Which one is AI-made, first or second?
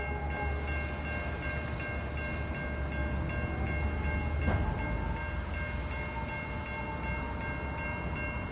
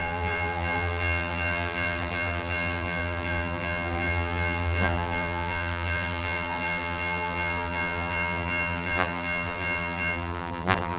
second